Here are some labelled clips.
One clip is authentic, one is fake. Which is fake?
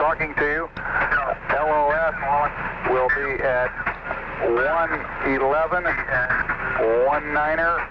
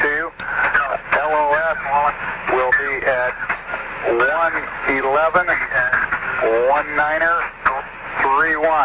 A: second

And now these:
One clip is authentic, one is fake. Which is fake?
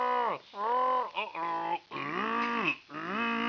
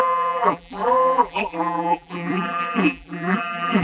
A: second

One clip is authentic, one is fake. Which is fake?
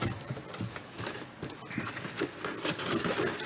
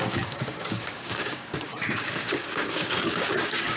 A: second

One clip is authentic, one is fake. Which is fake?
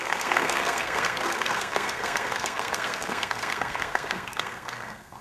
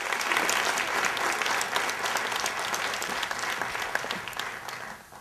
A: first